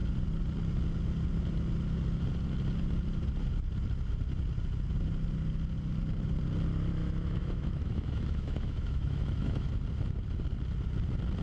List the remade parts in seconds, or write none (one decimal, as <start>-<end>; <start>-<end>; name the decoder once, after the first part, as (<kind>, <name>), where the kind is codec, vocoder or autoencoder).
7.0-9.7 (autoencoder, DAC-VAE)